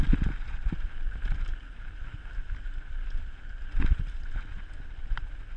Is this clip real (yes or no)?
yes